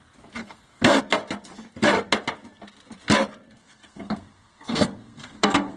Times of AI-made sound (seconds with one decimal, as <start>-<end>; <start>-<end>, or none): 0.4-1.0; 3.6-5.8